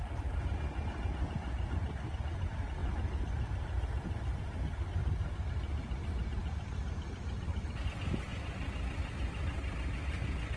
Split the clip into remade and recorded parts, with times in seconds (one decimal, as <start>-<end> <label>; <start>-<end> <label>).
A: 0.0-10.6 recorded